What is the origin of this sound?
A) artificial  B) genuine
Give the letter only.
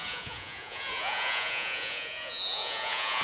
A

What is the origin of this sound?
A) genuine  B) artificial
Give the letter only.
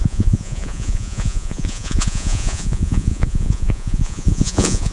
B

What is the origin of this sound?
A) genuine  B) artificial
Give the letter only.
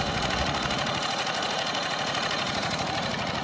B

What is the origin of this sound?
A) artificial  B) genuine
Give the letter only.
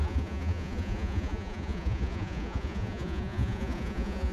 A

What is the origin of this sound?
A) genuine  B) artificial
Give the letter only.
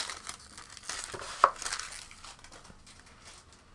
A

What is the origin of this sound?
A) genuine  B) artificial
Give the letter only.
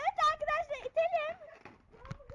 A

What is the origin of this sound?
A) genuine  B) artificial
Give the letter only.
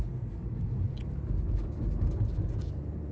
A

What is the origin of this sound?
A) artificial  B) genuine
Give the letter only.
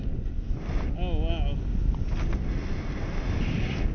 B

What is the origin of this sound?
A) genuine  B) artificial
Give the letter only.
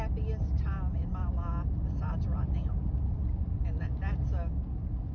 A